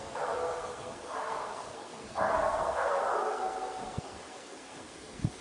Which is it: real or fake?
fake